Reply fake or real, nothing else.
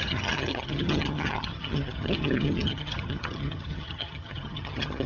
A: fake